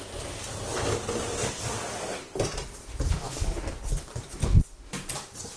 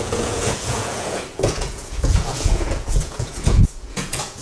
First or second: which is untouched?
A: first